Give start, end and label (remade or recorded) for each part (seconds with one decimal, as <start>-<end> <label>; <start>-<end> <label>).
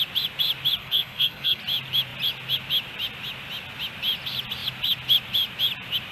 0.0-0.8 recorded; 0.8-1.6 remade; 1.6-6.1 recorded